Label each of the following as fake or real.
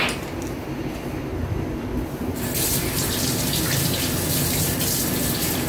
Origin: real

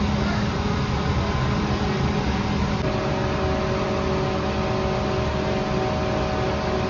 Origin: real